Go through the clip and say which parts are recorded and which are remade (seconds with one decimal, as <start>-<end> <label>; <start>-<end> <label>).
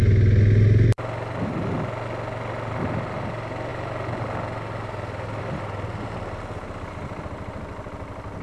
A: 0.0-8.4 recorded